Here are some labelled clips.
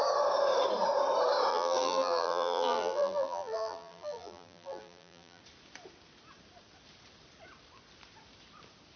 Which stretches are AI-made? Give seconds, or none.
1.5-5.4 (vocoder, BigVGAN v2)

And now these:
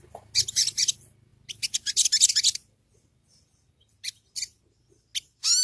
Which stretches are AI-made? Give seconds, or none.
none

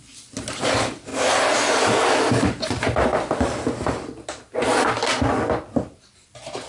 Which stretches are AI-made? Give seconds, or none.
none

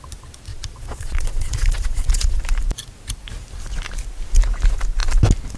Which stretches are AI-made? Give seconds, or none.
0.5-2.4 (vocoder, Vocos)